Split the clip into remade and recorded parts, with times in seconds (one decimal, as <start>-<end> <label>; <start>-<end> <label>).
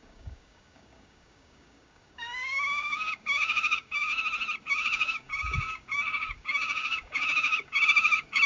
0.0-4.1 remade; 4.1-4.6 recorded; 4.6-8.5 remade